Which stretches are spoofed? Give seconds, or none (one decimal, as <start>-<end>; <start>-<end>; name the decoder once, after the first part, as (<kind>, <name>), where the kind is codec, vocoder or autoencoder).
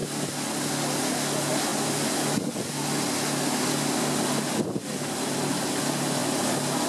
none